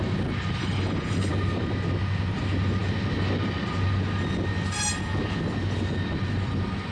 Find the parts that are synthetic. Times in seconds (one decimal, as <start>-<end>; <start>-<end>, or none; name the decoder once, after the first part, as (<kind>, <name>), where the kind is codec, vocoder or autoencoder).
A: 0.6-1.3 (codec, HILCodec)